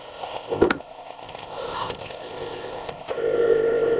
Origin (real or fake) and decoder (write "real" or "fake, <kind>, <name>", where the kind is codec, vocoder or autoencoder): fake, codec, ZipCodec